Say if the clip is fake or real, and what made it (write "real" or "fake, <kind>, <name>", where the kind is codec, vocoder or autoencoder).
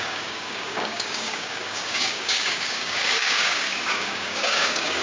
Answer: fake, codec, DAC